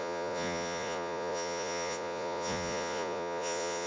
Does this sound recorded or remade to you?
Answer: remade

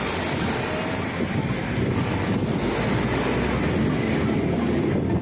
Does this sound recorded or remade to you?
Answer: recorded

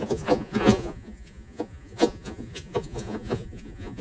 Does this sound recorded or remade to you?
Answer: remade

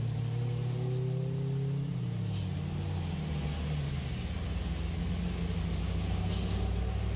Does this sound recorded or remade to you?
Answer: recorded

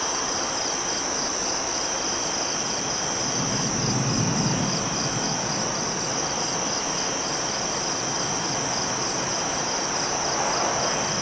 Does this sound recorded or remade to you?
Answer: recorded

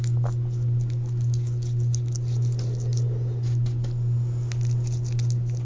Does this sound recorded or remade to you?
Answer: recorded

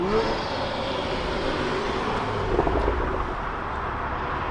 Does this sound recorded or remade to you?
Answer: recorded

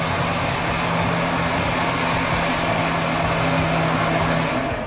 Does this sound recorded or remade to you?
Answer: recorded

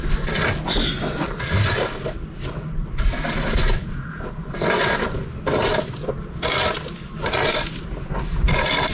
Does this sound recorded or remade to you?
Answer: recorded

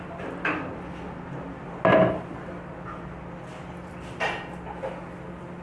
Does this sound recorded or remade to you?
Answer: recorded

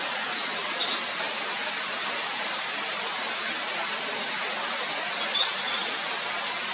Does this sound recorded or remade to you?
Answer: recorded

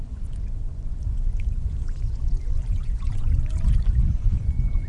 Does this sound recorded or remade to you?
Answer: remade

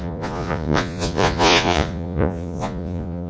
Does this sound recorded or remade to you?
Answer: remade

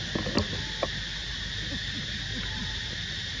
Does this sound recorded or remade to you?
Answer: recorded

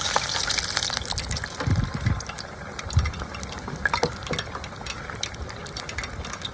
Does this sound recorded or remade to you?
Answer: recorded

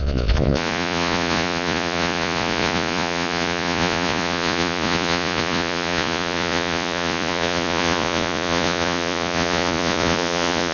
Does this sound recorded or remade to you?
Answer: remade